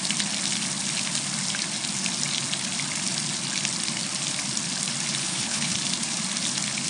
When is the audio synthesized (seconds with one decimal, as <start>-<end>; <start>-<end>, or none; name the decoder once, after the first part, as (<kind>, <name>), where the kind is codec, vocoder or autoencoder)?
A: 5.2-5.7 (codec, HILCodec)